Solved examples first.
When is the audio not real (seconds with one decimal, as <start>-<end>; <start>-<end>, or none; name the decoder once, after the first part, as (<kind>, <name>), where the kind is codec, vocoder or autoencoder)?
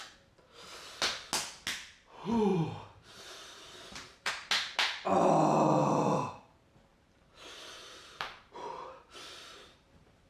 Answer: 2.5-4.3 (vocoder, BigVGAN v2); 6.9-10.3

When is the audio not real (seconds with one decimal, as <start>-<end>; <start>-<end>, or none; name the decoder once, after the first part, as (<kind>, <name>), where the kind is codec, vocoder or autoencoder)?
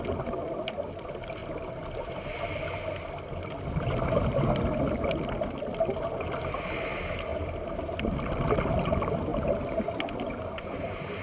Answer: 7.3-8.0 (vocoder, BigVGAN v2)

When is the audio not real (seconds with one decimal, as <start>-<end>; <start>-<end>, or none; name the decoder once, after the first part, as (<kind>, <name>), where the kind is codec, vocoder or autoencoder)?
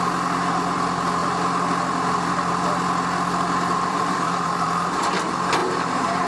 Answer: 3.9-5.0 (vocoder, BigVGAN v2); 5.6-6.3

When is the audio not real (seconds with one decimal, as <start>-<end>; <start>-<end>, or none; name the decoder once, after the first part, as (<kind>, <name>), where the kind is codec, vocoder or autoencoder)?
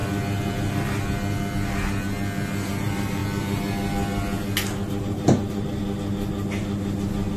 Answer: 2.8-3.2 (vocoder, BigVGAN v2); 5.0-5.8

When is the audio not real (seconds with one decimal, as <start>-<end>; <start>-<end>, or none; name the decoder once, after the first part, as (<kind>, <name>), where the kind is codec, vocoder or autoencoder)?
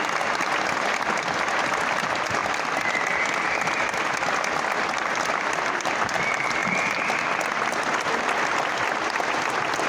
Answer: none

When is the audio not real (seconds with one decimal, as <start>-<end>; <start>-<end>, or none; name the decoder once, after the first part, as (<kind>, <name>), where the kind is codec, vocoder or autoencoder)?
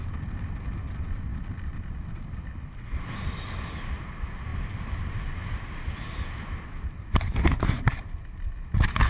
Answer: none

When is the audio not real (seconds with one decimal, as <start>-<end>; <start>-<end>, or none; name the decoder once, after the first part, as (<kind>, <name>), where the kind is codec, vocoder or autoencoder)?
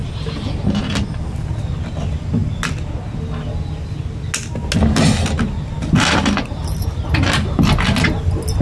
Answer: none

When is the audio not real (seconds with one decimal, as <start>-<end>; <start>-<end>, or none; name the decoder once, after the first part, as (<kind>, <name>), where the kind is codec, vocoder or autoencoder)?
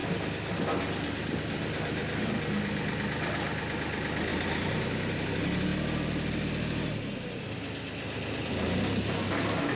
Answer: 4.3-5.2 (vocoder, BigVGAN v2)